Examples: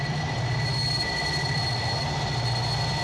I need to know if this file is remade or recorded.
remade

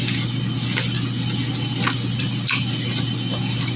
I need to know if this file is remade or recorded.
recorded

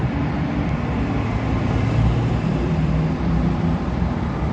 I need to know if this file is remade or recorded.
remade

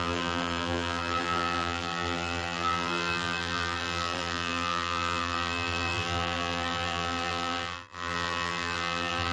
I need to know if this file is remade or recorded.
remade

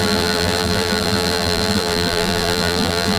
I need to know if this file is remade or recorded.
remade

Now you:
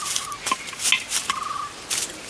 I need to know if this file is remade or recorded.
recorded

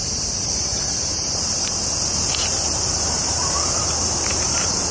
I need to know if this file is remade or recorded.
remade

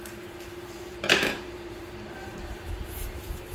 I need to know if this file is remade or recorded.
remade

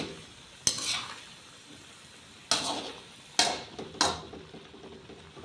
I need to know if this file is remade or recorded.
recorded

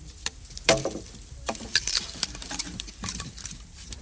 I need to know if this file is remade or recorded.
remade